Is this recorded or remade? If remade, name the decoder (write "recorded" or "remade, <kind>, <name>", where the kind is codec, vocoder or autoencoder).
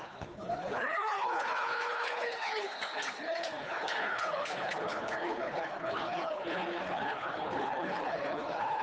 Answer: remade, codec, HILCodec